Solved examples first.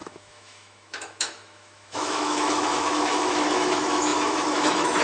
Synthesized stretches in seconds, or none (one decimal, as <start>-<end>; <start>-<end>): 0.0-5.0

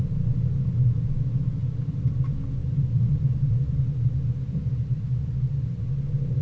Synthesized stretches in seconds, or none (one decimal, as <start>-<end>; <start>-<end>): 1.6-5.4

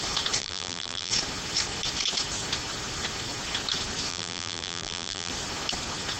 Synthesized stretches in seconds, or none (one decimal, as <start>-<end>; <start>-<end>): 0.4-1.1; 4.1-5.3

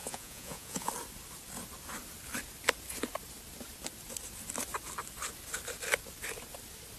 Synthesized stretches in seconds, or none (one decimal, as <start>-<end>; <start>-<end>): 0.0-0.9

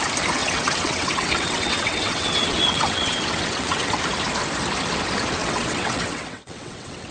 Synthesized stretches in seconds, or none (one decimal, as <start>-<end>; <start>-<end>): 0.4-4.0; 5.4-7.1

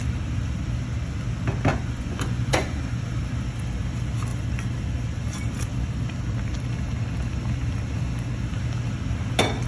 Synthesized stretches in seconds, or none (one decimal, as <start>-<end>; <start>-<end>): 1.7-3.0

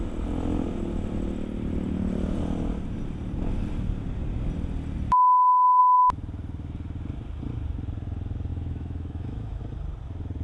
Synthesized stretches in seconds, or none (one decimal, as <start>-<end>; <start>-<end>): 8.5-9.6